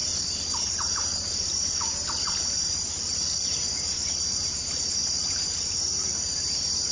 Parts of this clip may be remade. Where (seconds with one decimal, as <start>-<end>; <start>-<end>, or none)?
0.6-6.9